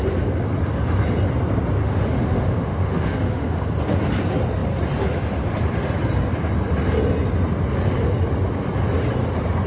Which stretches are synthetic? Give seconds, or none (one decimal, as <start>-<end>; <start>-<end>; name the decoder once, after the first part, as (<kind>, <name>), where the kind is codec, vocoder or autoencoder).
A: 1.8-3.6 (autoencoder, DAC-VAE)